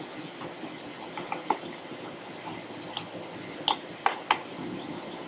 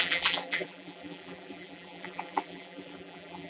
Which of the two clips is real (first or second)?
first